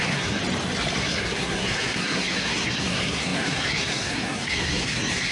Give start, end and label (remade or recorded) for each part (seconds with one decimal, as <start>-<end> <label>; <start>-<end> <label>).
0.0-0.4 remade; 0.4-1.0 recorded; 1.0-5.3 remade

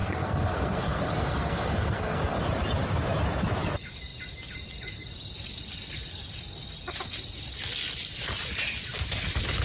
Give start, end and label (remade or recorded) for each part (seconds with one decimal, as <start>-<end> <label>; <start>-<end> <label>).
0.0-2.4 remade; 2.4-9.6 recorded

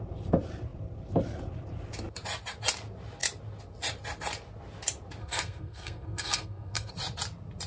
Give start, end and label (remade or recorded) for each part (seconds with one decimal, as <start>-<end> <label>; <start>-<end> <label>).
0.0-5.2 recorded; 5.2-6.9 remade; 6.9-7.7 recorded

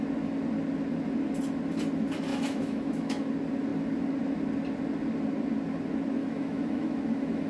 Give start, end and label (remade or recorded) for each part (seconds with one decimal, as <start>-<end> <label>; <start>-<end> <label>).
0.0-2.3 recorded; 2.3-3.3 remade; 3.3-6.2 recorded; 6.2-7.5 remade

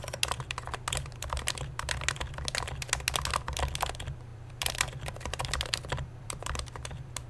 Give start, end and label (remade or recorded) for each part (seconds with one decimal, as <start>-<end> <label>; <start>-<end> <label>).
0.0-4.3 recorded; 4.3-7.3 remade